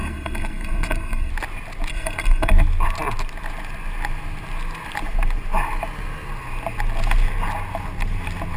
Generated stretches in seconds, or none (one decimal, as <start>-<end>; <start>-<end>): 0.0-1.3; 1.9-2.5